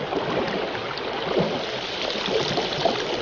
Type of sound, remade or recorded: recorded